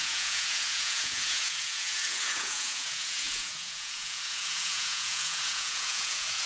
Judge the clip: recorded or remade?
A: remade